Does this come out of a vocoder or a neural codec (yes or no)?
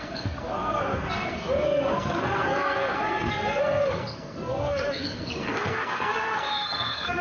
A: yes